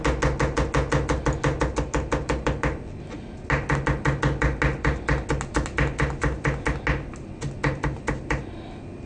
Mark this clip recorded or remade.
recorded